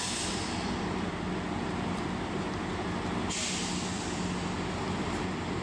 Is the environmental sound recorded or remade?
recorded